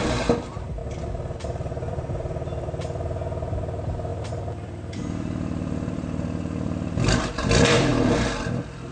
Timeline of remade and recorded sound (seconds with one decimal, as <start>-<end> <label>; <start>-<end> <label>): 0.0-0.8 remade; 0.8-1.4 recorded; 1.4-7.9 remade; 7.9-8.4 recorded; 8.4-8.9 remade

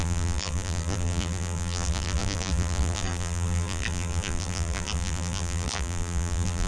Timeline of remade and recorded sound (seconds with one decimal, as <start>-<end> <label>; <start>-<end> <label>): 0.0-6.7 remade

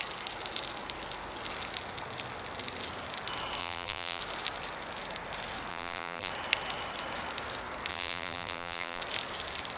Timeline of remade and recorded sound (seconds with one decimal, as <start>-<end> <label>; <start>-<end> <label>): 0.0-3.6 recorded; 3.6-4.2 remade; 4.2-5.7 recorded; 5.7-6.3 remade; 6.3-7.9 recorded; 7.9-9.0 remade; 9.0-9.8 recorded

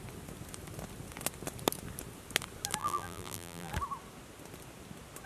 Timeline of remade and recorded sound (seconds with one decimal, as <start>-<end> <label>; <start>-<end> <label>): 0.0-2.8 recorded; 2.8-3.7 remade; 3.7-5.3 recorded